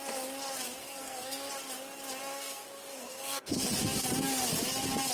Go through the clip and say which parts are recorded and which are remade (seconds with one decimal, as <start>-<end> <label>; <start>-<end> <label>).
0.0-0.8 recorded; 0.8-1.5 remade; 1.5-2.3 recorded; 2.3-3.8 remade; 3.8-5.1 recorded